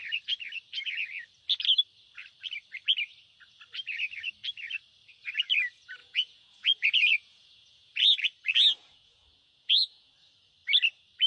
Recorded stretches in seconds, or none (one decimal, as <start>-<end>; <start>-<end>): 0.0-6.0; 8.0-8.8; 10.1-11.3